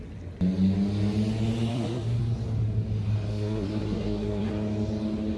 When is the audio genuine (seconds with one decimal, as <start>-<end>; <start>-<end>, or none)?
0.0-1.7; 2.2-3.3; 4.5-5.4